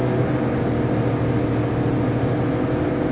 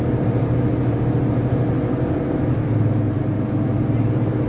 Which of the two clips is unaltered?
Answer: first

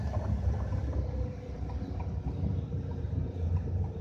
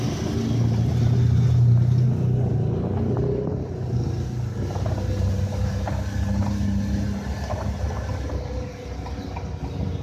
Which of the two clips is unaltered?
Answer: second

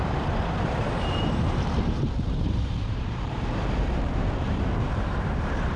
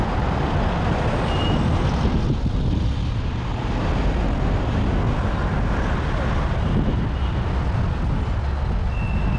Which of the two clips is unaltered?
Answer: second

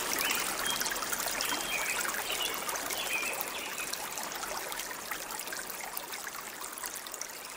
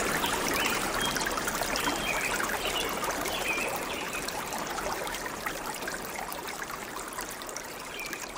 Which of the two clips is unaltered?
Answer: first